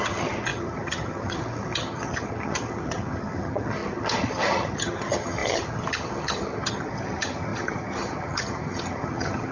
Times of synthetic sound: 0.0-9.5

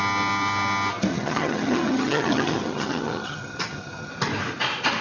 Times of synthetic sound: 1.1-4.1

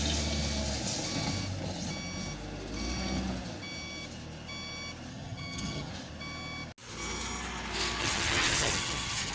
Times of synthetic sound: 5.1-5.9; 8.0-9.3

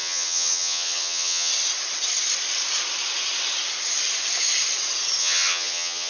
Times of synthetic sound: 0.0-1.5; 5.2-6.1

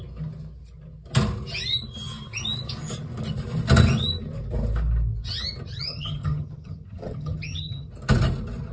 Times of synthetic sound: 5.7-7.9